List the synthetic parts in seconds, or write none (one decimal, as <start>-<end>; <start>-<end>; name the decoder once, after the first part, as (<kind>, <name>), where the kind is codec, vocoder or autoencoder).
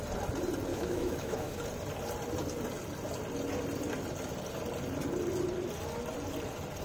0.7-1.5 (autoencoder, DAC-VAE)